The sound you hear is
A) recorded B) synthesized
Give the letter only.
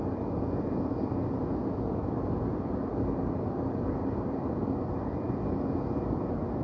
A